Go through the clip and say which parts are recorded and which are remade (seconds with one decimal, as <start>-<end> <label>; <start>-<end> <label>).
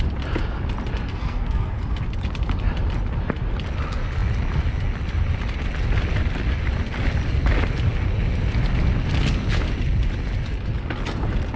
0.0-1.1 recorded; 1.1-2.0 remade; 2.0-11.6 recorded